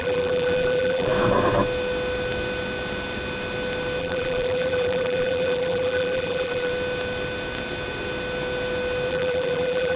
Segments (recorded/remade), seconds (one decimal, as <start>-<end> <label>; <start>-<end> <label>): 0.0-1.1 remade; 1.1-4.0 recorded; 4.0-6.7 remade; 6.7-9.1 recorded; 9.1-10.0 remade